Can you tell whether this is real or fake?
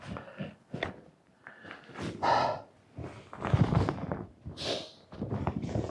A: real